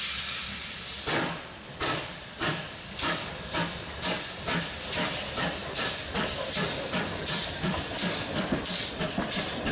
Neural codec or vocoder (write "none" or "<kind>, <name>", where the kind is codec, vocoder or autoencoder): vocoder, BigVGAN v2